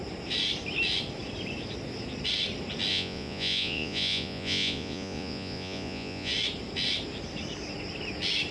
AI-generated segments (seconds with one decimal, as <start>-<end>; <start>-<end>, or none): 2.9-6.3